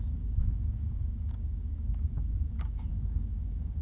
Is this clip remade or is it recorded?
remade